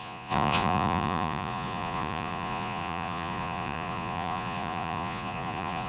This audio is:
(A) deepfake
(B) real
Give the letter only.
A